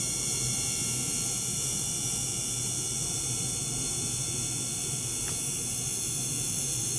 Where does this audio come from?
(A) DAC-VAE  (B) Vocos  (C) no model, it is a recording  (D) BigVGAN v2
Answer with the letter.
D